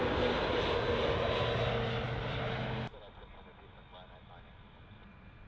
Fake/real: real